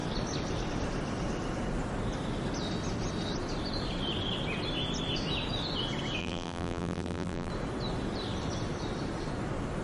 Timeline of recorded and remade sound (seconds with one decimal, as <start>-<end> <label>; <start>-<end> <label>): 0.0-6.2 recorded; 6.2-7.5 remade; 7.5-9.8 recorded